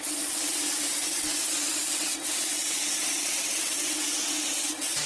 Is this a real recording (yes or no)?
no